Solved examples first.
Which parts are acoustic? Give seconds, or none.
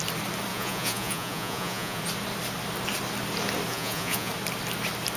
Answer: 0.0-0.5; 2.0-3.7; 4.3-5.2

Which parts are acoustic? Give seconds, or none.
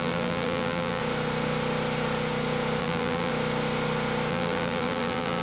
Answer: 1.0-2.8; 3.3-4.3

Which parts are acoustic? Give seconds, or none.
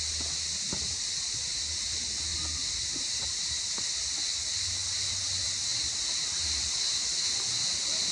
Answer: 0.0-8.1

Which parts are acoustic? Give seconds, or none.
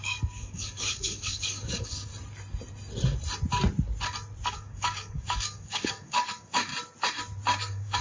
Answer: 2.1-4.5; 6.7-7.6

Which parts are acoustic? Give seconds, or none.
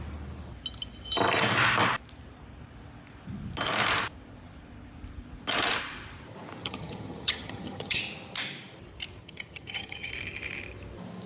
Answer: 0.0-6.6; 8.0-9.2; 10.1-11.3